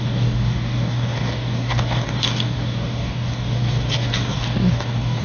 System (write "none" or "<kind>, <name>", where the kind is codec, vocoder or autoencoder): codec, DAC